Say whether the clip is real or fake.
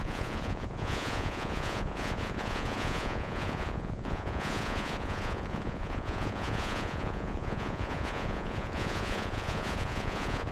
fake